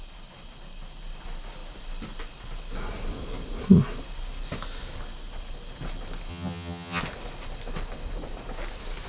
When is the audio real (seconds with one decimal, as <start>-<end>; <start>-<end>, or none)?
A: 0.0-6.3; 7.0-9.1